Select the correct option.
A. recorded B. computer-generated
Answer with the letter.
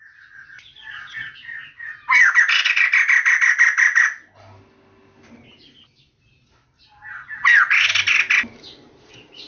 A